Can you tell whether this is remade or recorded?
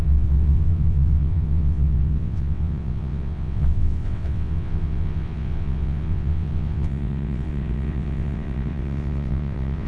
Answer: remade